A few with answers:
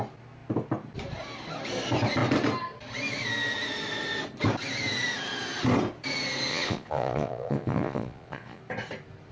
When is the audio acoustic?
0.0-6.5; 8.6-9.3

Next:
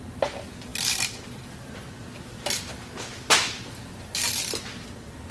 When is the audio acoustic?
0.0-5.3

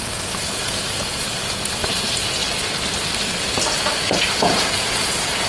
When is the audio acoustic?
2.4-4.4